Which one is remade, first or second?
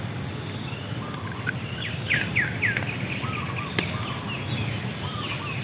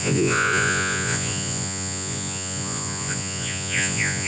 second